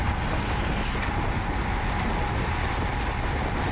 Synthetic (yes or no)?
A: no